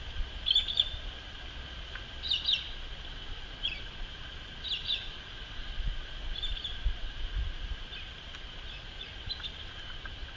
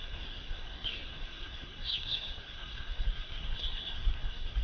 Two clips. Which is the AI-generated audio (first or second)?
second